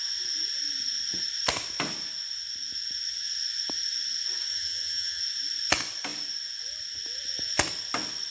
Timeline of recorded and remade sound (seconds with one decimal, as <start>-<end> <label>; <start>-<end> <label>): 0.0-4.5 recorded; 4.5-5.2 remade; 5.2-8.3 recorded